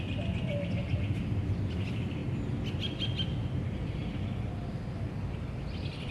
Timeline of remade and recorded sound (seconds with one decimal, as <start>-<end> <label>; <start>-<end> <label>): 0.0-6.1 recorded